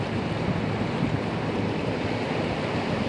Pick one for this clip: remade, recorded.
recorded